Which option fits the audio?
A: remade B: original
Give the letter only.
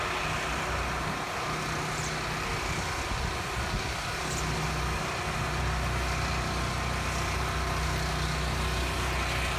B